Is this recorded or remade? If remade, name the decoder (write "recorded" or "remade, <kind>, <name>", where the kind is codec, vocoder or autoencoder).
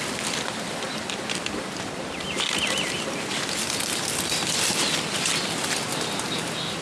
recorded